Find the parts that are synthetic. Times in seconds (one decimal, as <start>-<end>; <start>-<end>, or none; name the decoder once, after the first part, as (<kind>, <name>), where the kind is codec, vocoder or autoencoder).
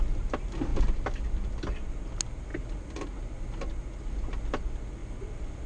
none